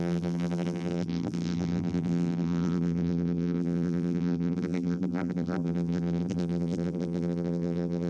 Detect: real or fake fake